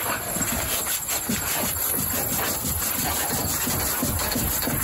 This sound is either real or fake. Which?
real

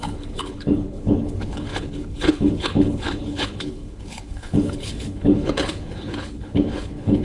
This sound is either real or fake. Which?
fake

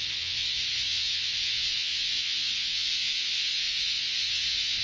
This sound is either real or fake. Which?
fake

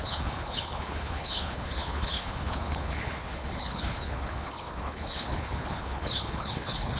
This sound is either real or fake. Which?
fake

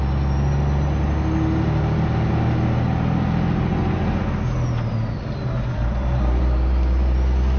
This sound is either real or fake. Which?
real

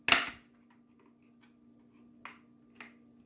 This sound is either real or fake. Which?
real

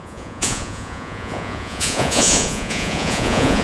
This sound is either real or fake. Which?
fake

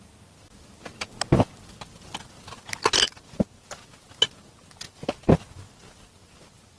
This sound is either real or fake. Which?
real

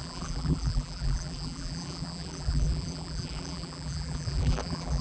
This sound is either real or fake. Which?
fake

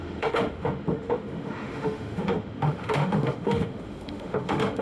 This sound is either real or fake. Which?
fake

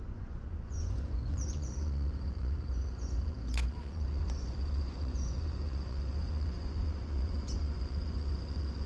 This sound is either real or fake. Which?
fake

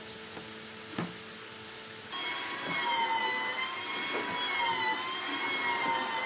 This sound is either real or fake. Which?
real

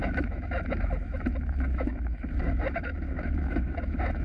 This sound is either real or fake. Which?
fake